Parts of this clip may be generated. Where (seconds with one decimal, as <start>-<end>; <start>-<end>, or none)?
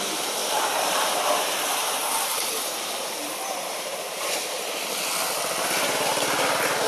0.4-4.2